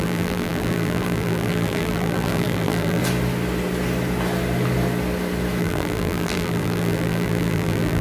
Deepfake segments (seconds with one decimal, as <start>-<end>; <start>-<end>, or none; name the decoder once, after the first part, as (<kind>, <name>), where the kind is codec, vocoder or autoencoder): 0.0-3.0 (vocoder, BigVGAN v2); 5.6-8.0